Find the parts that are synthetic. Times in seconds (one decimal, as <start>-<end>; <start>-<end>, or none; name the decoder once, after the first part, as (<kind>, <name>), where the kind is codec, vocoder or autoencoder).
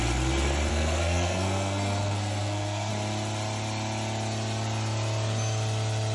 0.7-2.9 (codec, SNAC)